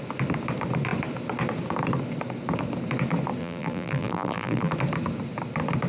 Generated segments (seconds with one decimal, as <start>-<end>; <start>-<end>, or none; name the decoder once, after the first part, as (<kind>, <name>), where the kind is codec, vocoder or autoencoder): 3.4-4.7 (vocoder, BigVGAN v2)